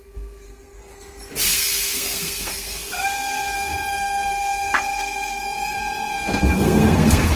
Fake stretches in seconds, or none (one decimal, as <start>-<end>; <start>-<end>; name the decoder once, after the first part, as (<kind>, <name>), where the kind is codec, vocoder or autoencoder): 0.0-0.9 (codec, SNAC); 1.5-7.4